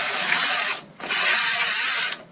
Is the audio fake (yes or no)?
yes